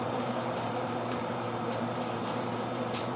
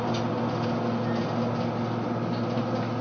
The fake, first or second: first